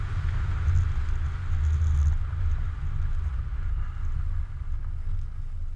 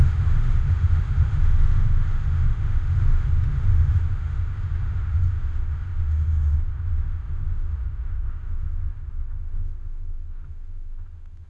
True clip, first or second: first